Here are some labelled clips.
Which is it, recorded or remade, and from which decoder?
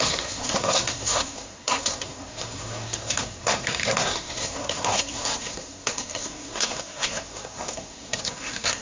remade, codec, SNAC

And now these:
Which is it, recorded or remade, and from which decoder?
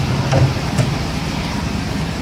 recorded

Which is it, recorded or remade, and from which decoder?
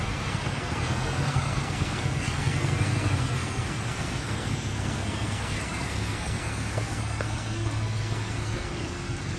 remade, codec, SNAC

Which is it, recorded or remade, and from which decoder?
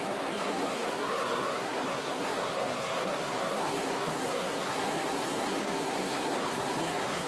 remade, codec, SNAC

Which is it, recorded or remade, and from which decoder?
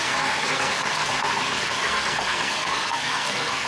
remade, codec, SNAC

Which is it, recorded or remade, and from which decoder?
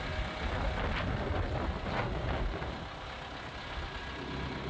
recorded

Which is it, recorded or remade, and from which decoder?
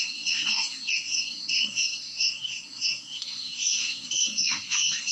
remade, codec, SNAC